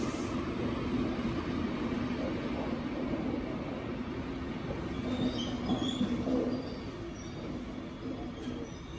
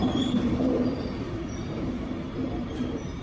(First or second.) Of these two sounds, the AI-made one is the second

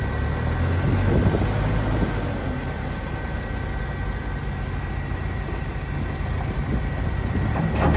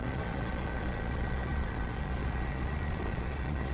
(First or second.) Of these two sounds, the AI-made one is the second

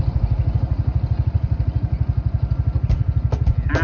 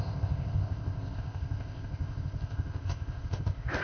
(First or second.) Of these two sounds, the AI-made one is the second